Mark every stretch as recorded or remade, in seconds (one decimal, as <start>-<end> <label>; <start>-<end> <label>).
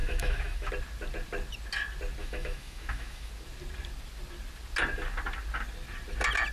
0.0-0.7 remade; 0.7-2.2 recorded; 2.2-3.3 remade; 3.3-6.5 recorded